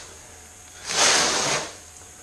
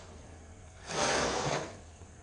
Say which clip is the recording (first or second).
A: first